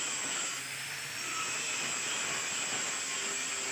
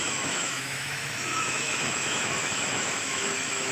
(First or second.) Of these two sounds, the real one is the first